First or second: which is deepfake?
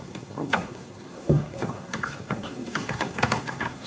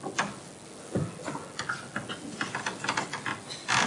first